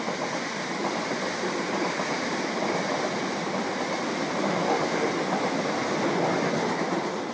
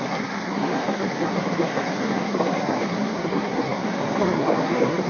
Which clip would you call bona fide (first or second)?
first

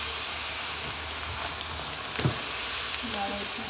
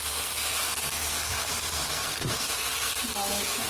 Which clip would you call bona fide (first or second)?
first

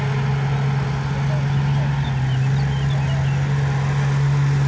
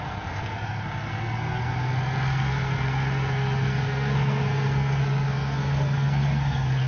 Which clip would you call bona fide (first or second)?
first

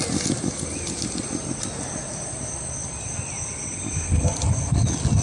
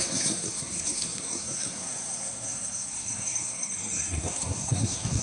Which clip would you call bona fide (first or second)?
first